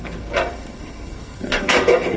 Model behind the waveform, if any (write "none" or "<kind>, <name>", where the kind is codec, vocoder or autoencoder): codec, SNAC